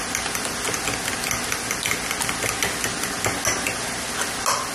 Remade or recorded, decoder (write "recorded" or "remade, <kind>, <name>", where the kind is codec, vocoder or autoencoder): recorded